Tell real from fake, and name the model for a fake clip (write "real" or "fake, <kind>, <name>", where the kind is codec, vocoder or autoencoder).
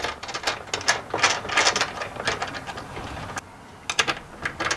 real